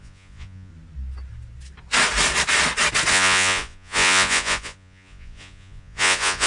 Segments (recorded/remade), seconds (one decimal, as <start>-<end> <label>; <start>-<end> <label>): 0.0-0.7 remade; 0.7-3.1 recorded; 3.1-6.5 remade